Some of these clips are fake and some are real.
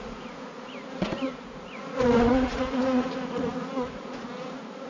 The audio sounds fake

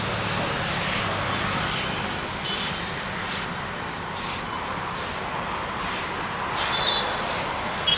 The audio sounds real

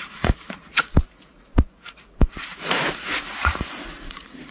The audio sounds fake